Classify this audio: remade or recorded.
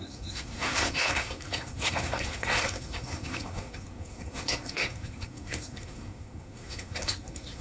remade